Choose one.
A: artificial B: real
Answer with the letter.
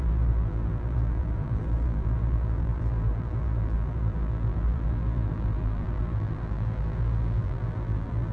A